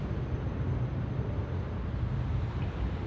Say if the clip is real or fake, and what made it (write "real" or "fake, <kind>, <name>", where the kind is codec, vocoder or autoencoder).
real